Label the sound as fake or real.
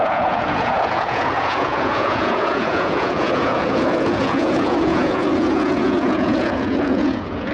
fake